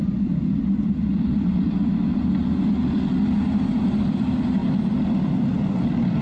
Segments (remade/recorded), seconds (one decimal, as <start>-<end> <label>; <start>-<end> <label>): 0.0-1.8 remade; 1.8-3.8 recorded; 3.8-4.6 remade; 4.6-5.7 recorded; 5.7-6.2 remade